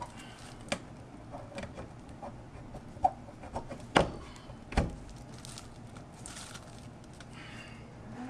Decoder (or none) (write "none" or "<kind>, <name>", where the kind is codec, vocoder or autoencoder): none